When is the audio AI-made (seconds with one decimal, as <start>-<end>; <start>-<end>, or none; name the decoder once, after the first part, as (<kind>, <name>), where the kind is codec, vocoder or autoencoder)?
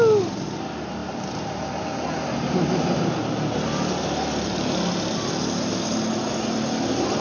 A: none